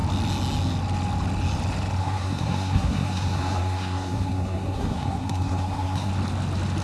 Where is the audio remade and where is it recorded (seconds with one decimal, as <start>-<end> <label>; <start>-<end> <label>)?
0.0-2.0 recorded; 2.0-6.1 remade; 6.1-6.8 recorded